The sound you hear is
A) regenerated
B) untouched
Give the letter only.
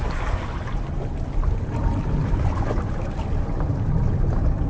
B